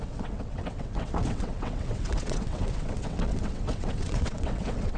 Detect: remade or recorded remade